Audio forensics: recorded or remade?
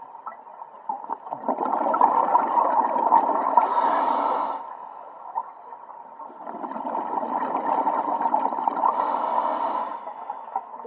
recorded